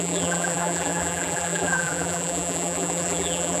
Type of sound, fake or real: fake